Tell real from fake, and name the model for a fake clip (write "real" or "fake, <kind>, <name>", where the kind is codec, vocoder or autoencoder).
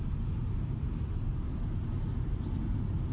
real